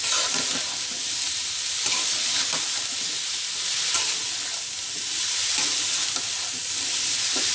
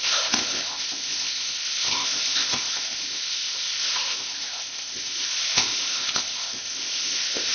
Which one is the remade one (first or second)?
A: second